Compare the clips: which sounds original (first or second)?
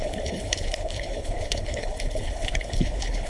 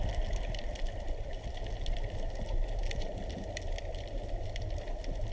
second